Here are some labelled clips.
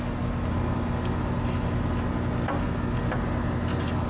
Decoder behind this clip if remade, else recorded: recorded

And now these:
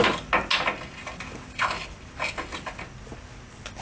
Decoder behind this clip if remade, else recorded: recorded